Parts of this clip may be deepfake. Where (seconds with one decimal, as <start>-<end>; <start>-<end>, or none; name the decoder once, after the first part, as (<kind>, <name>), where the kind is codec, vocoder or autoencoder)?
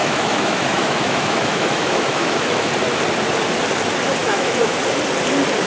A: 0.0-2.7 (autoencoder, DAC-VAE); 4.2-4.8